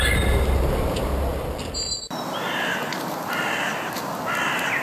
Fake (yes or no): no